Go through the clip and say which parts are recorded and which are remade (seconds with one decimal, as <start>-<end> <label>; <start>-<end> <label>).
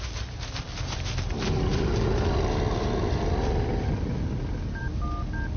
0.0-5.6 recorded